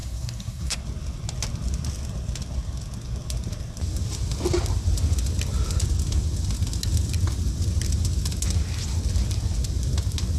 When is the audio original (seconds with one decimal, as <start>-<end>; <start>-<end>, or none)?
0.8-10.4